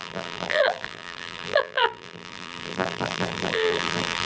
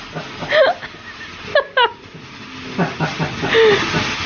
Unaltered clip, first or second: second